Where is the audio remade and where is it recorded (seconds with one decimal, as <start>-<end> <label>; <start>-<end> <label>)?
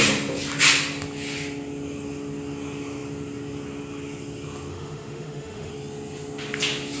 0.0-4.7 recorded; 4.7-5.7 remade; 5.7-7.0 recorded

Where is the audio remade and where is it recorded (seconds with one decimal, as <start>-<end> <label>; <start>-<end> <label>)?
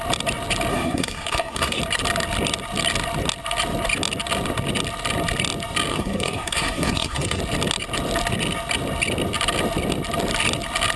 0.0-0.7 recorded; 0.7-1.8 remade; 1.8-5.9 recorded; 5.9-7.4 remade; 7.4-11.0 recorded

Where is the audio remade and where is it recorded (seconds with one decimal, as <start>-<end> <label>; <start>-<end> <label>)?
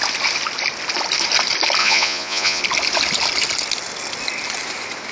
0.0-1.8 recorded; 1.8-2.6 remade; 2.6-5.1 recorded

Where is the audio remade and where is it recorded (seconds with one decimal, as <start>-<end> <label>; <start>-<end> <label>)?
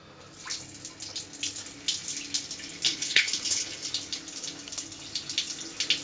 0.0-2.9 recorded; 2.9-3.9 remade; 3.9-6.0 recorded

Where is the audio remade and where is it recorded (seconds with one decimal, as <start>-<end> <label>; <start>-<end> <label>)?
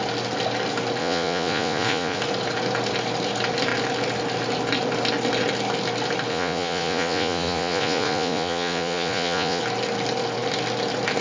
0.0-1.0 recorded; 1.0-2.2 remade; 2.2-6.3 recorded; 6.3-9.6 remade; 9.6-11.2 recorded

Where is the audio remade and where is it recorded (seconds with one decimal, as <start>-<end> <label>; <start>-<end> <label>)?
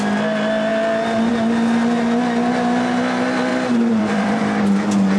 0.0-3.5 recorded; 3.5-4.4 remade; 4.4-5.2 recorded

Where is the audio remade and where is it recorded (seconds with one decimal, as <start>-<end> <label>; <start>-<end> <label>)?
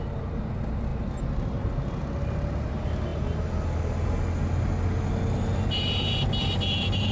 0.0-7.1 recorded